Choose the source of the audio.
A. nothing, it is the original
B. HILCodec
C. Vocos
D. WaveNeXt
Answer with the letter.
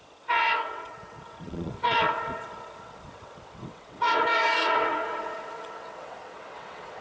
D